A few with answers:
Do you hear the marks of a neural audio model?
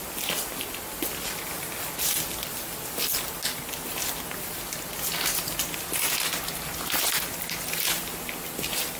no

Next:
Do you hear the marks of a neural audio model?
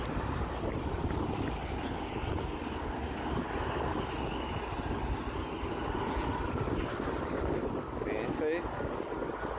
no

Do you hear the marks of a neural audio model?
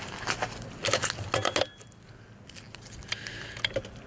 no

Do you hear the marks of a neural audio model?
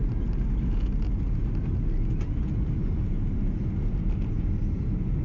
no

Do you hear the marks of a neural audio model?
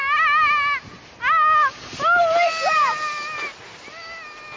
no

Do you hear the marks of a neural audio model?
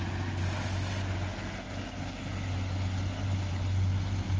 no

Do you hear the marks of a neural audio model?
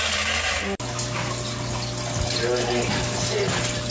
no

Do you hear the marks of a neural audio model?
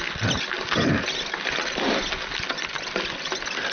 no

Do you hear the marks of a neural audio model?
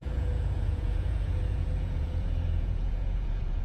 yes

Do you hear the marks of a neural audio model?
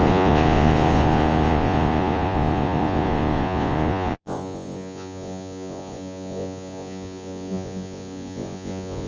yes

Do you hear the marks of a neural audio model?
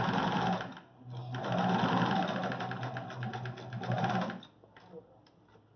no